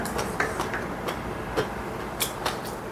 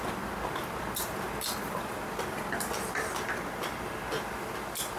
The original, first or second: second